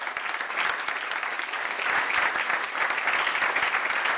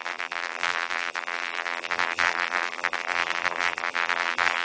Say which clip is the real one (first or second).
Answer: first